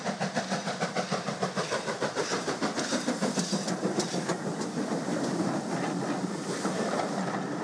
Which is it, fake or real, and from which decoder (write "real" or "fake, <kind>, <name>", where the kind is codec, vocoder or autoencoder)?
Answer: real